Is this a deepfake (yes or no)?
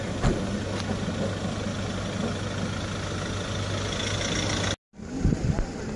no